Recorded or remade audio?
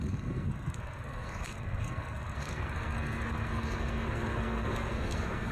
remade